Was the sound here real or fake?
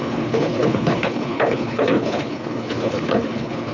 fake